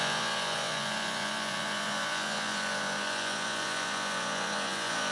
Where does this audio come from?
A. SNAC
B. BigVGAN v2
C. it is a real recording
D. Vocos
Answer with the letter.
D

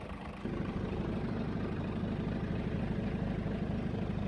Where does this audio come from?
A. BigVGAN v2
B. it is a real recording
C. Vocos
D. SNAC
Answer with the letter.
A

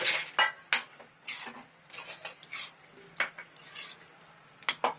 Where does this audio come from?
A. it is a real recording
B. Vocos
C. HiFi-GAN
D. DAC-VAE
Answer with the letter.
A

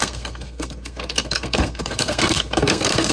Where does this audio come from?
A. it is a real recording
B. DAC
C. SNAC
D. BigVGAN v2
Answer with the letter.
C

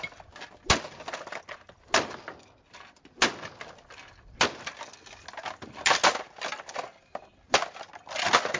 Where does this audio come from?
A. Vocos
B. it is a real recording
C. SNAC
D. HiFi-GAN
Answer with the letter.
B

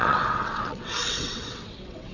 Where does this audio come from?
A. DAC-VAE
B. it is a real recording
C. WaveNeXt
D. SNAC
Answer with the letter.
C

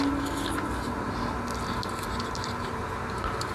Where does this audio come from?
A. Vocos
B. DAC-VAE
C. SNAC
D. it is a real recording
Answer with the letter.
D